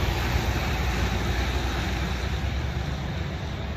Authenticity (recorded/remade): recorded